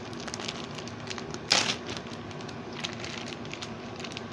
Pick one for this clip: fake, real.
real